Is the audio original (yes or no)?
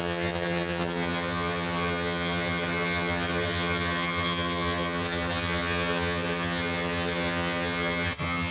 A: no